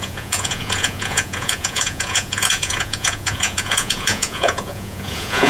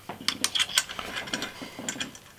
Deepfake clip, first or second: first